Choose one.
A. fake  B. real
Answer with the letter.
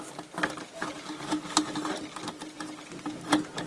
B